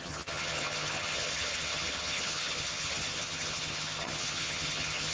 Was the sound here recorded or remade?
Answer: remade